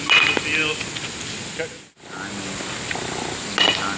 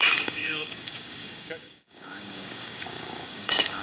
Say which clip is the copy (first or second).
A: second